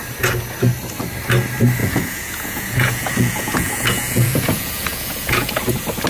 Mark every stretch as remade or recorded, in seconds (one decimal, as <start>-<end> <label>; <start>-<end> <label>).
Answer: 0.0-1.8 recorded; 1.8-5.5 remade; 5.5-6.1 recorded

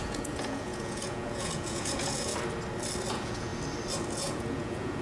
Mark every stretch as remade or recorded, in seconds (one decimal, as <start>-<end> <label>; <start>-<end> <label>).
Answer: 0.0-2.3 remade; 2.3-3.1 recorded; 3.1-3.5 remade; 3.5-4.2 recorded; 4.2-5.0 remade

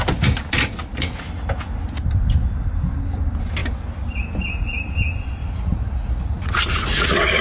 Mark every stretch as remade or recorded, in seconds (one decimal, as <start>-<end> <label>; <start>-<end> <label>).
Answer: 0.0-5.4 recorded; 5.4-7.4 remade

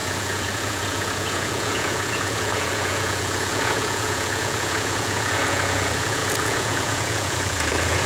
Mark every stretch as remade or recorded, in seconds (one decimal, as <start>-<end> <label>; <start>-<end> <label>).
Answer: 0.0-8.1 remade